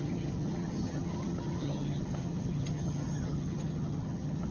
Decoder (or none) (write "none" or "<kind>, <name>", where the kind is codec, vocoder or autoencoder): vocoder, HiFi-GAN